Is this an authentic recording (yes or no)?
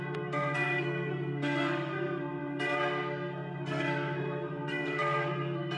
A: no